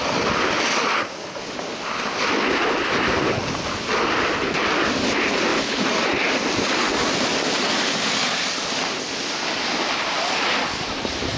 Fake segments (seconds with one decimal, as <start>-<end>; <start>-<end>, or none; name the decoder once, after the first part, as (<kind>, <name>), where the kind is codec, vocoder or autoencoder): none